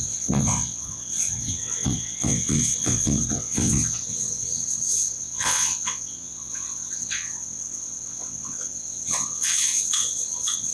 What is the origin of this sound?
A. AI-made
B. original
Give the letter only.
A